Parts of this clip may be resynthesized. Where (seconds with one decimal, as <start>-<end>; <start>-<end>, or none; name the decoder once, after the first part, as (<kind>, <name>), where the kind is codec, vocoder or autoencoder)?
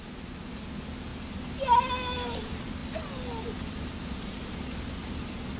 none